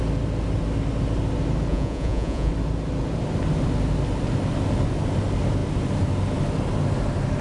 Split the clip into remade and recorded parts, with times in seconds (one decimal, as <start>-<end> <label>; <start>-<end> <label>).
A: 0.0-1.7 recorded; 1.7-2.5 remade; 2.5-7.4 recorded